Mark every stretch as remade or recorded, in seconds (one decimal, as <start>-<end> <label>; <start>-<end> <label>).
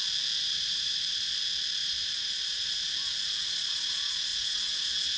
0.0-0.4 recorded; 0.4-1.4 remade; 1.4-1.8 recorded; 1.8-2.9 remade; 2.9-5.2 recorded